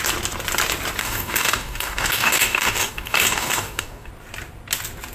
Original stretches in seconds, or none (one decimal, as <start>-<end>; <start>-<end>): 0.0-1.0; 4.1-5.1